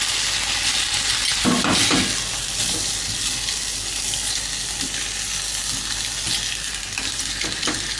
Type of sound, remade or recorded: recorded